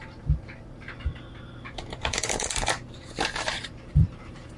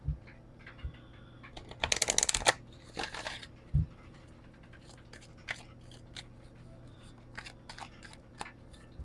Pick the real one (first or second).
second